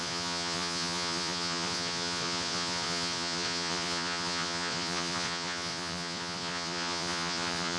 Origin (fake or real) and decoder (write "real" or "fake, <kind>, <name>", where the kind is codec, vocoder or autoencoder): fake, vocoder, Vocos